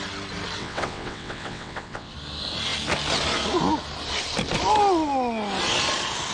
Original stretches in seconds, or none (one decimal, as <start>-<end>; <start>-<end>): 0.0-0.6; 2.1-6.3